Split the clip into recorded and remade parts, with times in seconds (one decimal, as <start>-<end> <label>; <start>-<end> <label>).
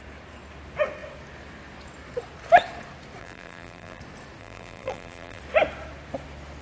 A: 0.0-3.2 recorded; 3.2-4.0 remade; 4.0-4.4 recorded; 4.4-5.4 remade; 5.4-6.6 recorded